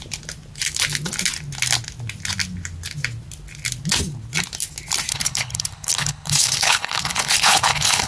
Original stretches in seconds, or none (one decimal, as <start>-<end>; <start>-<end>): 0.0-5.1